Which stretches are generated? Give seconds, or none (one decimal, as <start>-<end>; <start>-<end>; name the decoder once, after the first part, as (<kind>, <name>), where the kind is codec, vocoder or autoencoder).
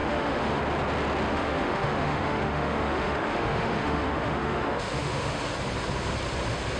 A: 0.0-0.6 (autoencoder, DAC-VAE); 1.3-5.4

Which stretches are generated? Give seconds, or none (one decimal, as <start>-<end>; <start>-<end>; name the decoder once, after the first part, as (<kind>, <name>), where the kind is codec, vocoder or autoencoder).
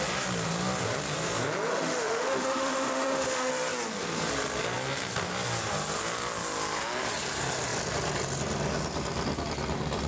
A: 1.7-3.5 (autoencoder, DAC-VAE)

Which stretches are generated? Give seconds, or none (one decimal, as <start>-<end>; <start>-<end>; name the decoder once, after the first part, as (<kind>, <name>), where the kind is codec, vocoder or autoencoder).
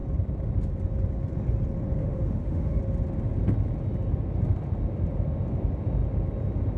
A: 2.0-2.8 (autoencoder, DAC-VAE)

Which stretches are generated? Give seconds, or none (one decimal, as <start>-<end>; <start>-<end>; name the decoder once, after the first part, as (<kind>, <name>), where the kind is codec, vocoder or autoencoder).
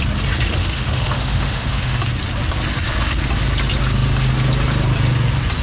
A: 0.6-2.0 (autoencoder, DAC-VAE)